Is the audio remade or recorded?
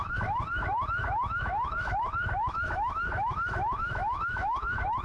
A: remade